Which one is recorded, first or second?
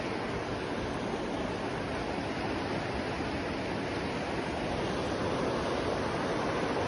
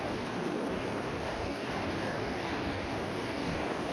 first